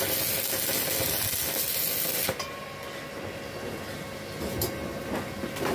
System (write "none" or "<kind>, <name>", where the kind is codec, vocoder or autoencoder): none